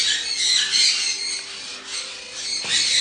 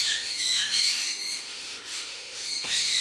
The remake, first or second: second